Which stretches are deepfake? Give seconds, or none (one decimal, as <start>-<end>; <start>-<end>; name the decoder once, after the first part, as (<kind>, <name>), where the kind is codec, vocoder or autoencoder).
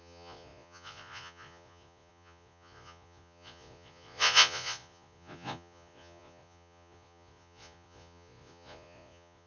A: 0.0-9.5 (vocoder, Vocos)